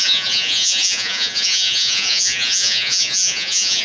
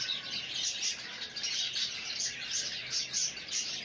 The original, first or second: second